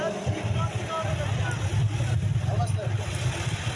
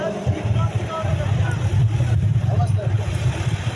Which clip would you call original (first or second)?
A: first